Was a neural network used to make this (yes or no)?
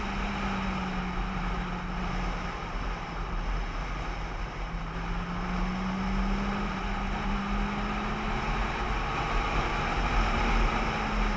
no